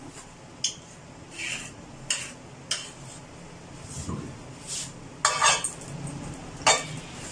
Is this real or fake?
real